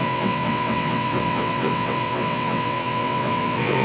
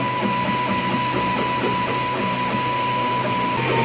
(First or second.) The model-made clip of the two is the first